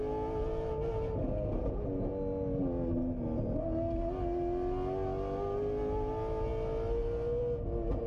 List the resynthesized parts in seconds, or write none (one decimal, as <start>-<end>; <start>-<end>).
none